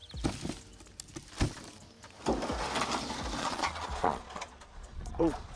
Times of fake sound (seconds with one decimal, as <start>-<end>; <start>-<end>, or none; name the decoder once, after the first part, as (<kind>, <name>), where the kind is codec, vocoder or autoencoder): 3.4-5.6 (vocoder, Vocos)